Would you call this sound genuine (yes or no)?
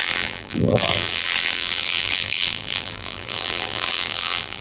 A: no